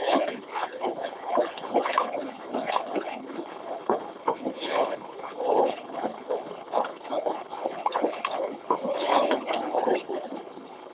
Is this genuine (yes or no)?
no